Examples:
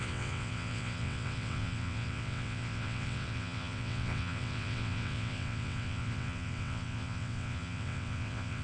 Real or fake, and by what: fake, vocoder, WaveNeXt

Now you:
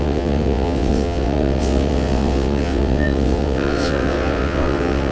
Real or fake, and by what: fake, vocoder, WaveNeXt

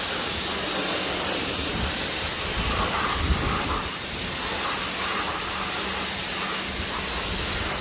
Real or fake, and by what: real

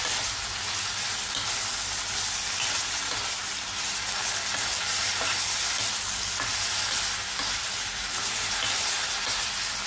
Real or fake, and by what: real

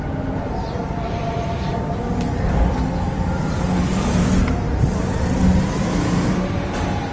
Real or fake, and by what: real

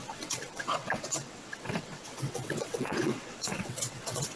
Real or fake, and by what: fake, vocoder, WaveNeXt